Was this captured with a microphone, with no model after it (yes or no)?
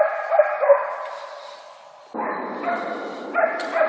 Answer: yes